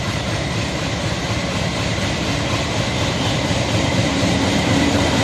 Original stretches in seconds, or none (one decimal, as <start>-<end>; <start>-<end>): 1.2-3.9